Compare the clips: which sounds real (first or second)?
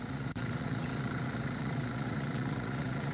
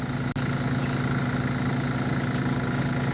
second